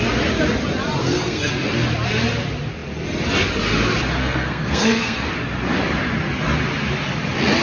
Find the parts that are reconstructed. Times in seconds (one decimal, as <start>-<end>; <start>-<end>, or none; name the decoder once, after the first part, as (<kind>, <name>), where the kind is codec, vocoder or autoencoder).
1.0-1.5 (codec, SNAC); 4.2-5.3

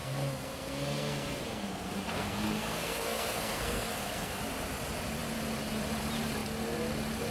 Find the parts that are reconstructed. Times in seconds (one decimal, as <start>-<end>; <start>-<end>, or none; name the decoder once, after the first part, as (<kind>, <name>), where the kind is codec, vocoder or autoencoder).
0.0-4.4 (codec, SNAC)

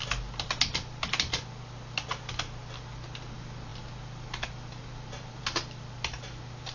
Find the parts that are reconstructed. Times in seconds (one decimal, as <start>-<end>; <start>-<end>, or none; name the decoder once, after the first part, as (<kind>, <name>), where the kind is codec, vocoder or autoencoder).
none

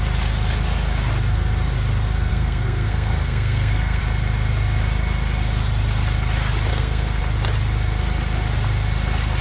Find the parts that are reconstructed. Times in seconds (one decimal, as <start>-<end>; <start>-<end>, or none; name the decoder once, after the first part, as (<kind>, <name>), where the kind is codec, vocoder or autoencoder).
2.3-4.0 (codec, SNAC); 6.7-7.2

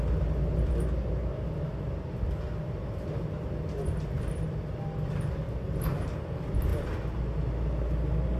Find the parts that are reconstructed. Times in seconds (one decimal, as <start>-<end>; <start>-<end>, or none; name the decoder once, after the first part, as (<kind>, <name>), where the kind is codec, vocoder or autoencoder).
none

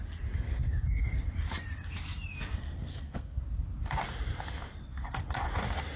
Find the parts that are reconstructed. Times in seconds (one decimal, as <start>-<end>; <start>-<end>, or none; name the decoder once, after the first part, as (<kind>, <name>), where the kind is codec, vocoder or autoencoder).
2.9-3.4 (codec, SNAC)

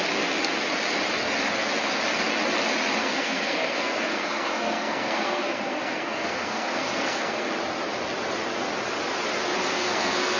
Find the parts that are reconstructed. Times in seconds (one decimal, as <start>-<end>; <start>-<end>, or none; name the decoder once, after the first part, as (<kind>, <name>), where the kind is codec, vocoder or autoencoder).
3.0-7.5 (codec, SNAC); 9.6-10.4